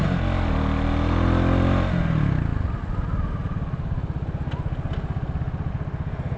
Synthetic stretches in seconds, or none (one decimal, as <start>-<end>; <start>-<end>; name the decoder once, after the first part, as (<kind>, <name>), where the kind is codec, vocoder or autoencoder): none